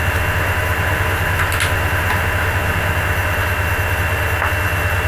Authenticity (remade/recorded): recorded